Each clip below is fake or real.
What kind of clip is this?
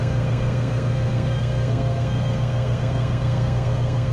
fake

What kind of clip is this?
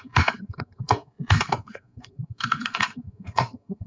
fake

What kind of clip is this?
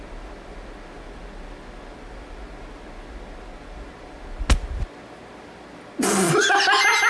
real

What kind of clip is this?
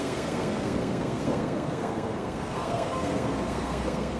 fake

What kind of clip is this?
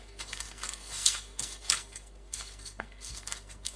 fake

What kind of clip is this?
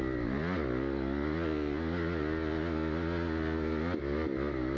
real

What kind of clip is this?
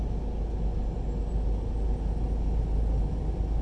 real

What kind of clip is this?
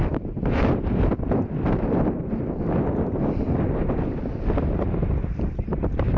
real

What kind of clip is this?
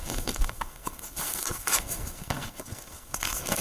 fake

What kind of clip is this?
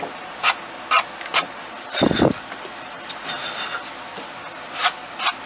real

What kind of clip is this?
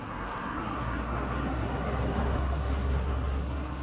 fake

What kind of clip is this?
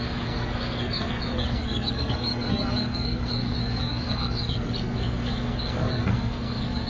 fake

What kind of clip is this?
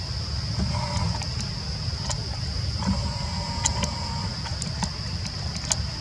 real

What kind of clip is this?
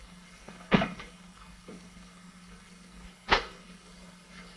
fake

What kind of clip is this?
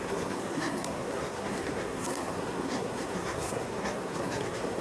fake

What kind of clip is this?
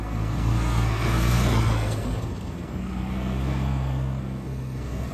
fake